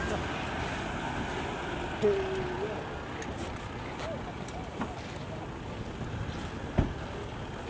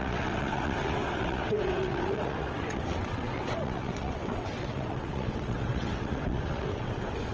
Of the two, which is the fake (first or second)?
second